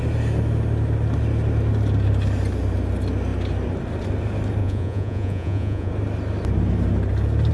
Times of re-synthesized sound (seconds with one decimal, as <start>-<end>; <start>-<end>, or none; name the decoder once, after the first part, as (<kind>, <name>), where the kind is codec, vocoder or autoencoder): 4.6-5.9 (vocoder, Vocos)